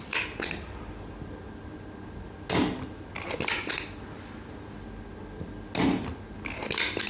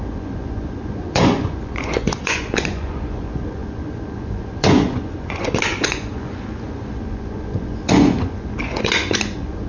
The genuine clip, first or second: first